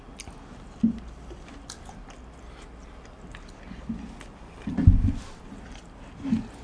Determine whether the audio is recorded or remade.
recorded